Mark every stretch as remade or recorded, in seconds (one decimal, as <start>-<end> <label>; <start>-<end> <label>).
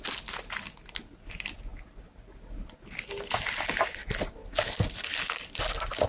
0.0-6.1 recorded